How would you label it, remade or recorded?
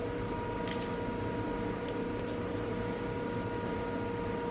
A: recorded